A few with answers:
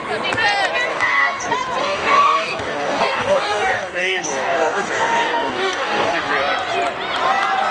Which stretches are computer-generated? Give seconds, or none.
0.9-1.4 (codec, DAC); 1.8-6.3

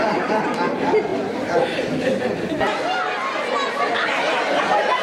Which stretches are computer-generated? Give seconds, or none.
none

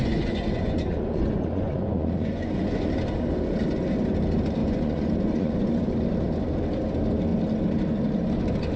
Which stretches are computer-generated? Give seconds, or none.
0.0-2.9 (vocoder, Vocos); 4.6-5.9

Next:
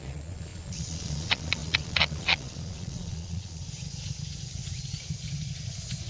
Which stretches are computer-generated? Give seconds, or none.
0.0-3.6 (vocoder, Vocos)